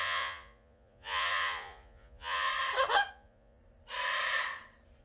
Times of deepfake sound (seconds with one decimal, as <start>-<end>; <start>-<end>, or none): 0.0-2.5; 3.1-3.6

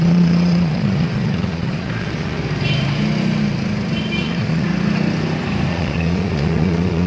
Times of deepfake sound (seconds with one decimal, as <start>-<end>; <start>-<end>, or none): 0.0-2.4; 4.2-4.7; 5.7-7.1

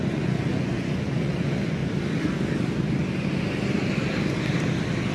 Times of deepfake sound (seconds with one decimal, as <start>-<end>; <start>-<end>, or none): 0.0-1.8

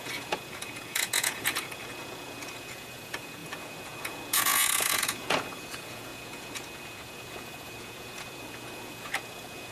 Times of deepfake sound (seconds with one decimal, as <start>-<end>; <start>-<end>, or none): 0.0-9.7

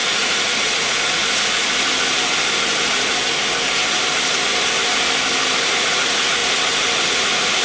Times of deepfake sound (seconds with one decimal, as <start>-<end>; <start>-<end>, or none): 0.0-1.2; 5.8-6.4; 7.1-7.6

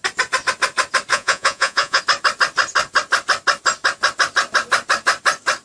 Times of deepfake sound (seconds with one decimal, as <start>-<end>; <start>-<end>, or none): 1.1-2.0

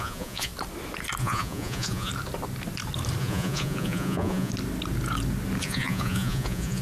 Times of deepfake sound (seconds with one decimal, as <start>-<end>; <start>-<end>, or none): 0.0-0.5; 1.2-2.1; 3.2-4.5; 5.6-6.8

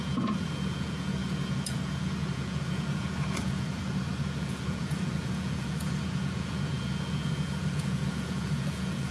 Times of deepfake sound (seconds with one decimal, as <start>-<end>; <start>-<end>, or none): 0.0-9.1